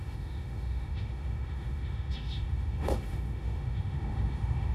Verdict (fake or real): fake